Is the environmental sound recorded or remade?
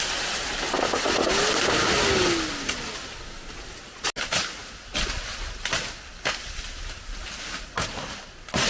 recorded